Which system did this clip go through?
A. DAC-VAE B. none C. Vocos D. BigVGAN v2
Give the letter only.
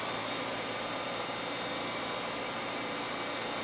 B